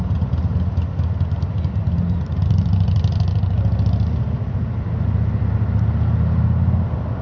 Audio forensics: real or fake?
real